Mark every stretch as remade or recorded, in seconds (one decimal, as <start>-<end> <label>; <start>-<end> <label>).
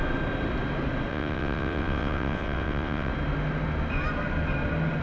0.0-1.1 recorded; 1.1-3.1 remade; 3.1-5.0 recorded